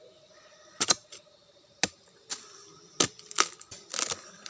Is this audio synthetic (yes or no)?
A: no